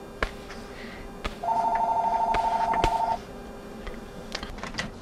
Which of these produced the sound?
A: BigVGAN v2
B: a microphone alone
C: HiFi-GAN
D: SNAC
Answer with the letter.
B